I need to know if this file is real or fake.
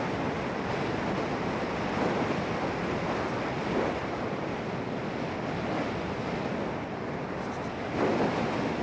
real